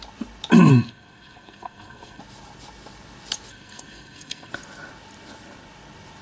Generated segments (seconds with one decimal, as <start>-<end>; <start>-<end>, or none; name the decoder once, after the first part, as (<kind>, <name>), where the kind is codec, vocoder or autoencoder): 0.7-2.2 (codec, SNAC); 3.5-4.5